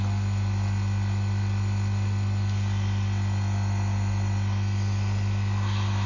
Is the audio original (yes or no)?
yes